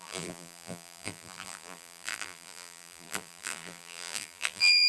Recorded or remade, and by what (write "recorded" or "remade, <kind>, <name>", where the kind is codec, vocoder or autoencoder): remade, vocoder, BigVGAN v2